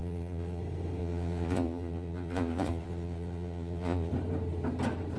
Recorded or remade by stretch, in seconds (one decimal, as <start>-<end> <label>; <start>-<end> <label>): 0.0-0.6 remade; 0.6-1.0 recorded; 1.0-4.1 remade; 4.1-5.2 recorded

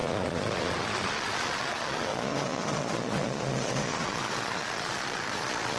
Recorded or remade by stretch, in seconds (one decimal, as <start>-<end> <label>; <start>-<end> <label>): 0.0-5.8 remade

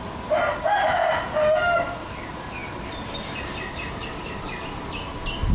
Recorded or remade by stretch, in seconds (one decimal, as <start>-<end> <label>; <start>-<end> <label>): 0.0-5.5 recorded

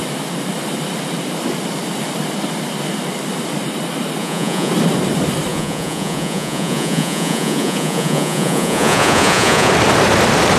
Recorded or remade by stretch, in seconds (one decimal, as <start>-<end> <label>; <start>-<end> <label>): 0.0-4.2 recorded; 4.2-4.7 remade; 4.7-5.5 recorded; 5.5-9.7 remade; 9.7-10.6 recorded

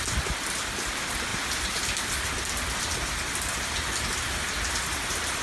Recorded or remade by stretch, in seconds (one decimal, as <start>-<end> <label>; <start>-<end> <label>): 0.0-5.4 recorded

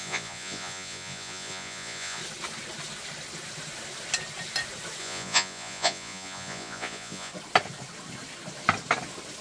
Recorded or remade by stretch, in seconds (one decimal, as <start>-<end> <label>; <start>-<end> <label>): 0.0-2.2 remade; 2.2-5.0 recorded; 5.0-7.3 remade; 7.3-9.4 recorded

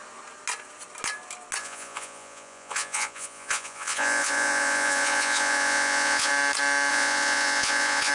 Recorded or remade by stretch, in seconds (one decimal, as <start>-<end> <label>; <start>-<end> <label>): 0.0-1.6 recorded; 1.6-6.3 remade; 6.3-6.9 recorded; 6.9-8.1 remade

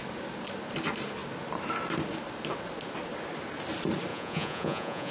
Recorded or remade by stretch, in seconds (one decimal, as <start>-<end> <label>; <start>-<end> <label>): 0.0-4.1 recorded; 4.1-5.1 remade